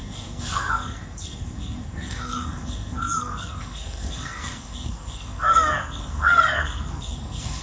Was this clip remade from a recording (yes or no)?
yes